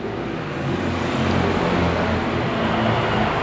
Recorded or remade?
recorded